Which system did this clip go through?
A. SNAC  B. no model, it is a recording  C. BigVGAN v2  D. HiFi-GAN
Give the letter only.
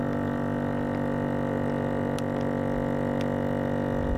B